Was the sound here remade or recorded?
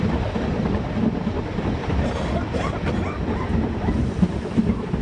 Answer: recorded